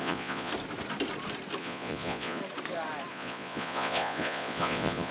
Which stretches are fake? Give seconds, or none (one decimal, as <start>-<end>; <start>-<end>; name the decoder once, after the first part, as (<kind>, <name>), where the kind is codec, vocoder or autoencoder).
0.0-0.5 (vocoder, Vocos); 1.6-2.4; 3.1-5.1